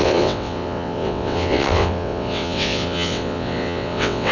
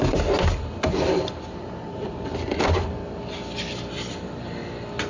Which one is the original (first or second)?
second